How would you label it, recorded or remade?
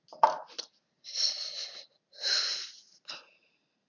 recorded